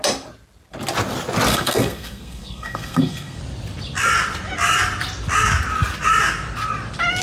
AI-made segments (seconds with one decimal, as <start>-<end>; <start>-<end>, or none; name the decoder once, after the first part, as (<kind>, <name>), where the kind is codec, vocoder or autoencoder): 1.5-3.4 (codec, SNAC)